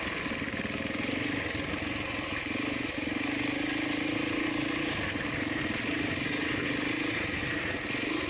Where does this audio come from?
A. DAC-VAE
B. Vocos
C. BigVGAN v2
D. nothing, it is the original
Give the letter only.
D